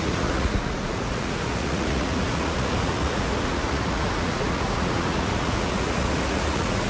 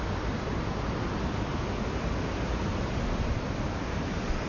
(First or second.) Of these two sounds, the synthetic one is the first